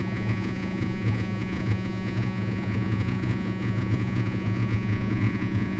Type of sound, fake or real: fake